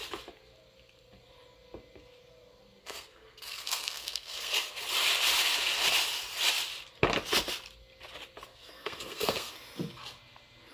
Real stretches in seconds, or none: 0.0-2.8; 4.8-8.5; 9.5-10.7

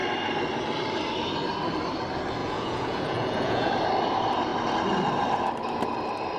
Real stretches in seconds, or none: 0.0-2.4; 3.7-6.4

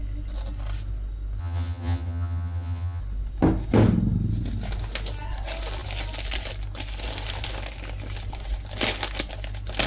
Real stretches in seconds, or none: 0.0-1.4; 3.0-9.9

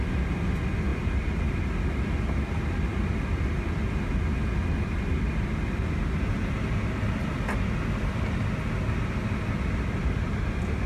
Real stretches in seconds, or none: 0.0-10.9

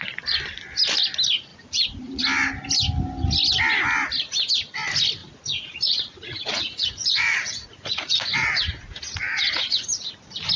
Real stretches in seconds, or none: 0.0-1.5; 2.2-5.2; 10.1-10.6